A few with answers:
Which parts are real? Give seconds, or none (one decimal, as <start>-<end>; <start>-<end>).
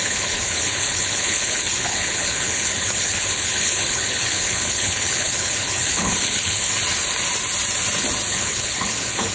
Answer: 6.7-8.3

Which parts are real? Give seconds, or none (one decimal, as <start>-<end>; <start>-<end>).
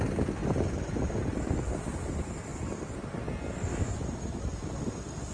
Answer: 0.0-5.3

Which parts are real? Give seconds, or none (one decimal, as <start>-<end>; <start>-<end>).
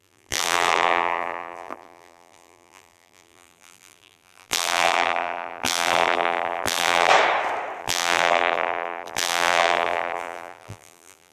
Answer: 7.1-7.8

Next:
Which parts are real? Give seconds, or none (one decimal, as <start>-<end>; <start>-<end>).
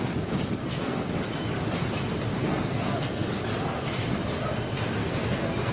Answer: 0.0-0.6; 1.1-2.4; 3.3-5.0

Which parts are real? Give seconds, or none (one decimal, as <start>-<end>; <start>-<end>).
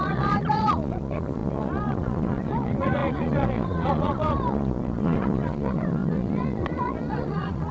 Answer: none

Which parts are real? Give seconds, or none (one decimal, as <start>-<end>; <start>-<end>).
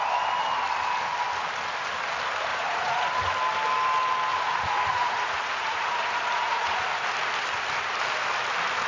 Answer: 0.0-2.5; 3.3-4.3; 6.9-8.9